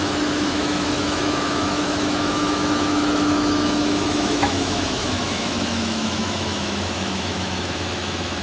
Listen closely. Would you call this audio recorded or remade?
remade